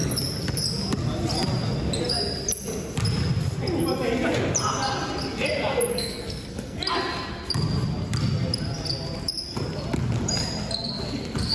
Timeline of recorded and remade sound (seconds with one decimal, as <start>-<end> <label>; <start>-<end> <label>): 0.0-5.9 recorded; 5.9-6.8 remade; 6.8-11.5 recorded